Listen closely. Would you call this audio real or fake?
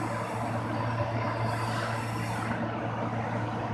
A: real